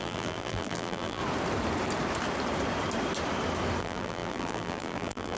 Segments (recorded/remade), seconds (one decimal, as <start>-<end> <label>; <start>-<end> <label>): 0.0-1.2 remade; 1.2-3.8 recorded; 3.8-5.4 remade